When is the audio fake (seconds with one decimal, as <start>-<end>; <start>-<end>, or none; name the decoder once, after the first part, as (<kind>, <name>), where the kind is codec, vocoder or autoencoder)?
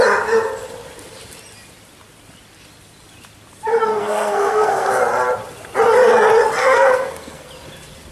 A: 3.9-4.9 (codec, SNAC); 6.6-7.5